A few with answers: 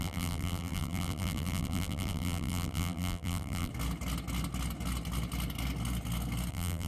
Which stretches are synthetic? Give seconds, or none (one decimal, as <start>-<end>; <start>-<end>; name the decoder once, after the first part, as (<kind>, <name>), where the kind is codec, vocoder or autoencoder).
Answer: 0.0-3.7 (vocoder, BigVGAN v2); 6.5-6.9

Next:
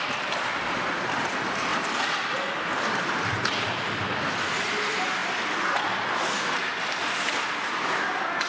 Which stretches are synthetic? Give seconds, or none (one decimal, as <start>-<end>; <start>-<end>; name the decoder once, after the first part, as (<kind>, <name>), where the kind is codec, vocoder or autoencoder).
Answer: 1.7-3.2 (vocoder, BigVGAN v2); 5.2-7.6

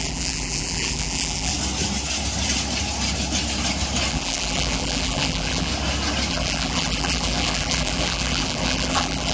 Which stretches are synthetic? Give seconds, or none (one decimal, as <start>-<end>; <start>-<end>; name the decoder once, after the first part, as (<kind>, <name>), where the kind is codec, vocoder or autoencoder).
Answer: 0.0-1.5 (vocoder, BigVGAN v2); 4.1-5.7; 6.3-9.3

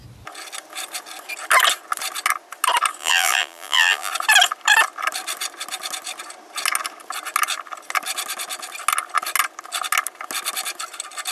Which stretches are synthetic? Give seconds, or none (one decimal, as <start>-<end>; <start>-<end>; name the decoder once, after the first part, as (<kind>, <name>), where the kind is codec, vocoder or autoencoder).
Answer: 3.0-4.1 (vocoder, BigVGAN v2)

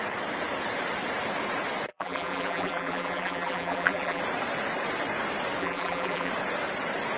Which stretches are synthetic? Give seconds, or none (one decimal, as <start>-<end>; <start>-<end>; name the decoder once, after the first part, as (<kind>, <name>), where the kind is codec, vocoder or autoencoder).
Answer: 1.9-4.2 (vocoder, BigVGAN v2); 5.6-6.3